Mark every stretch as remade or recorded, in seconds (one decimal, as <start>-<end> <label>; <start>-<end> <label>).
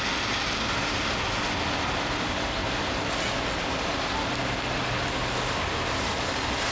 0.0-6.7 recorded